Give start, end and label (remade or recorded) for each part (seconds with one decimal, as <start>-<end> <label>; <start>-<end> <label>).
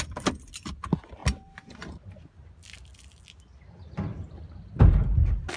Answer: 0.0-5.6 recorded